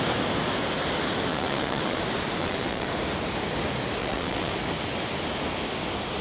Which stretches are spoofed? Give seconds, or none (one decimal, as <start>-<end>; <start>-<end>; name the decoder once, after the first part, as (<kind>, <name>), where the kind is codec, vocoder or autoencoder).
1.3-2.0 (vocoder, WaveNeXt); 2.4-2.9; 4.0-4.5